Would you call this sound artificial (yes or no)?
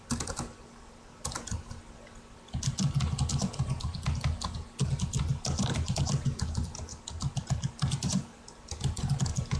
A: no